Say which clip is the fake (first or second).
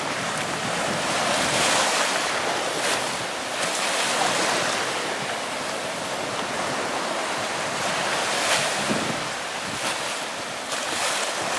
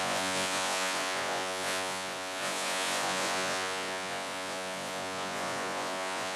second